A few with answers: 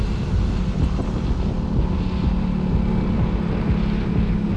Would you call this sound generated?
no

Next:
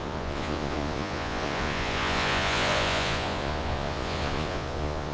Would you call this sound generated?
yes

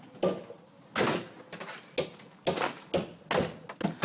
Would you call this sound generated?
no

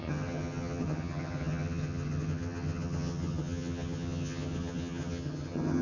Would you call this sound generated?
yes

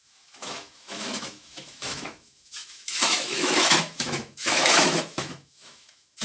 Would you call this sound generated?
yes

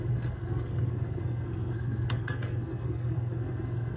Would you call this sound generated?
yes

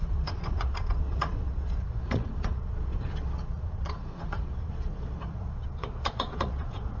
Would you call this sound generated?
yes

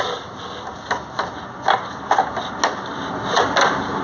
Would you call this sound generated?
no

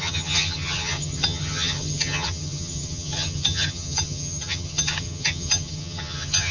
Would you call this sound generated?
yes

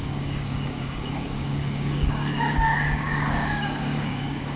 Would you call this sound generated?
yes